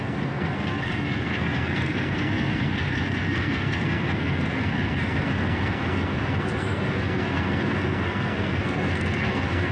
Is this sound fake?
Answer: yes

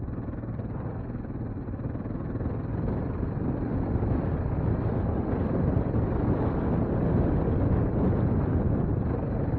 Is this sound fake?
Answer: no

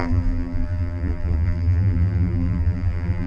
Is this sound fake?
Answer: yes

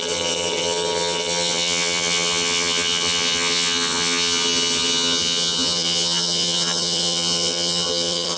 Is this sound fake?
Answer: yes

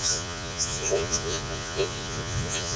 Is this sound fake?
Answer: yes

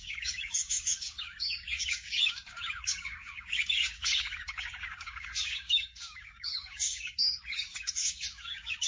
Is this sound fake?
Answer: yes